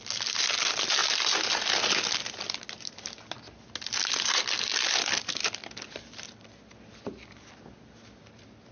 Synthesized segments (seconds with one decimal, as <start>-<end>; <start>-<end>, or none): none